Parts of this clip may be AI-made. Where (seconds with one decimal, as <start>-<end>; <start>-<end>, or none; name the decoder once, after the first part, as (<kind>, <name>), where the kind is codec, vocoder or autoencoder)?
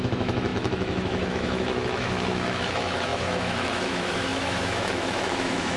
0.0-5.8 (autoencoder, DAC-VAE)